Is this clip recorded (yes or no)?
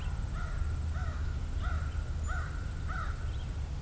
yes